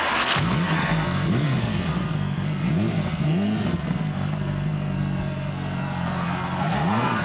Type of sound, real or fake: fake